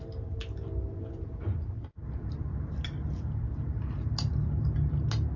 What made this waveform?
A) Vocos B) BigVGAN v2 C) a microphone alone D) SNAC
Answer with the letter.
C